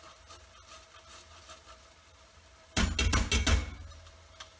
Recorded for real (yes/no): yes